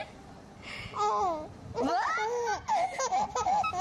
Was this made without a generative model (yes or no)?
yes